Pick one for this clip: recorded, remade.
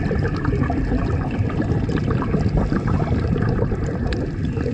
remade